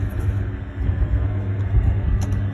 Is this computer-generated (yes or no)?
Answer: yes